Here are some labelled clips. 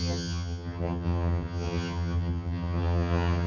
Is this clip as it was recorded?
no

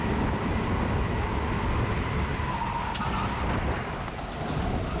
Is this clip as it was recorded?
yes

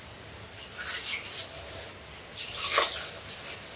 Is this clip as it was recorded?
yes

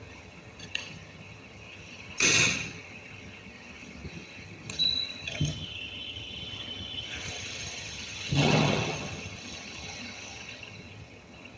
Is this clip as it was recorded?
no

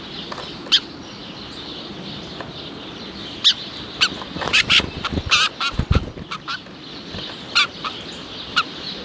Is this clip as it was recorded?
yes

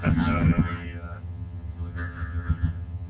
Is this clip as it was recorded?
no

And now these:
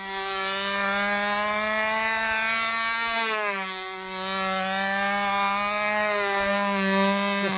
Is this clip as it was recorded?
yes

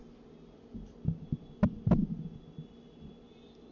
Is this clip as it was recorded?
yes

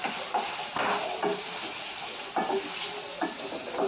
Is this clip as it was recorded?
yes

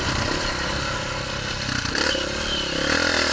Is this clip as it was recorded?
yes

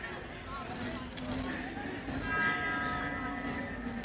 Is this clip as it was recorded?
yes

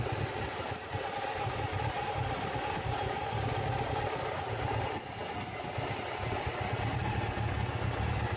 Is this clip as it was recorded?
yes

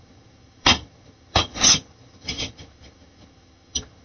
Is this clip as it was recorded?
no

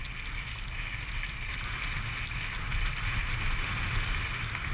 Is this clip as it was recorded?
yes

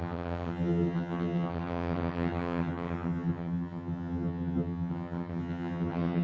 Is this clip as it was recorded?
no